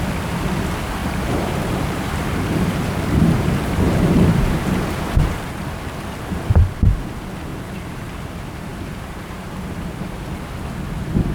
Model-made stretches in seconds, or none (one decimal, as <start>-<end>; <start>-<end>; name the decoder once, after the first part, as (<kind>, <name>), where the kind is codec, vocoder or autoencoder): 1.0-6.2 (vocoder, BigVGAN v2); 7.5-8.2; 8.7-10.7